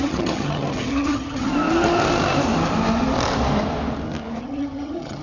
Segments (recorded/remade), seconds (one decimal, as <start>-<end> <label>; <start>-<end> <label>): 0.0-1.5 remade; 1.5-4.4 recorded; 4.4-5.2 remade